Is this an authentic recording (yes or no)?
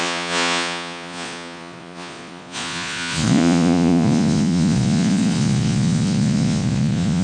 no